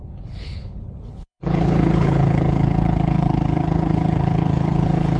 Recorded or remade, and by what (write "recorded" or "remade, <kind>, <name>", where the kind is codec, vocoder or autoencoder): remade, codec, HILCodec